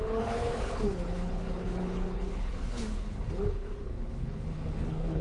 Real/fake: fake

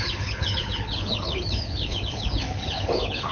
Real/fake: fake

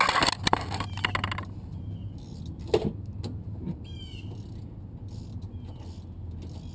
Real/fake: real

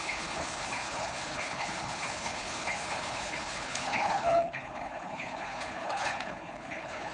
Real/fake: fake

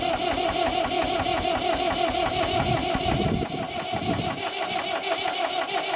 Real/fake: real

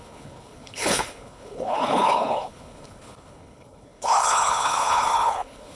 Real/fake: fake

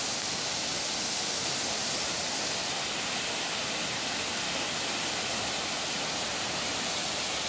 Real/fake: real